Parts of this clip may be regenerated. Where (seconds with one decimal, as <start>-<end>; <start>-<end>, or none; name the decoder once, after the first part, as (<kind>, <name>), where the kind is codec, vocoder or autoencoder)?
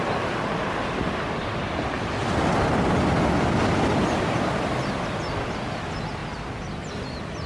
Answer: none